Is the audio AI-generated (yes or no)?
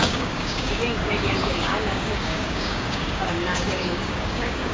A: yes